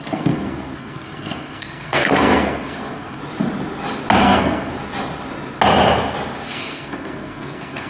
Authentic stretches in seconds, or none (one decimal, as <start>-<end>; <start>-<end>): 3.2-4.2; 4.7-6.5